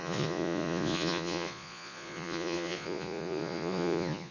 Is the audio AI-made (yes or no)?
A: yes